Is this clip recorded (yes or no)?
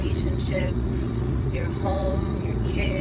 no